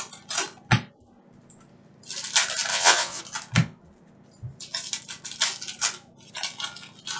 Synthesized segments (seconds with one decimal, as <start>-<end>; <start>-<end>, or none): 2.7-3.2